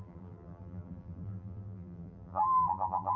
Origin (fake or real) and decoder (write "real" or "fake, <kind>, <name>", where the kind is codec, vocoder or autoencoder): fake, vocoder, BigVGAN v2